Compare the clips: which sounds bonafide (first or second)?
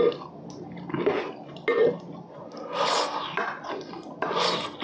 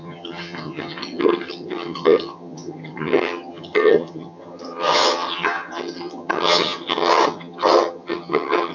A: first